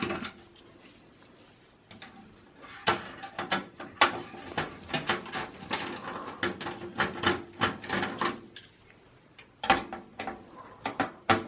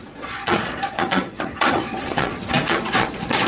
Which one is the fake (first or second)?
second